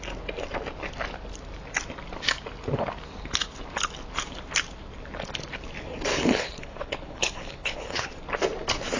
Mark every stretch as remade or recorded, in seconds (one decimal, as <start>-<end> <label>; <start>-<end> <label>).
0.0-6.1 recorded; 6.1-8.1 remade; 8.1-9.0 recorded